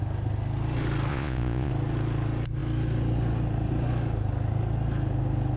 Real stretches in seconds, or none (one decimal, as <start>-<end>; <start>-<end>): 0.0-1.1; 1.7-5.6